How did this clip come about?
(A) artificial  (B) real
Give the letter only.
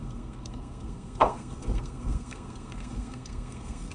A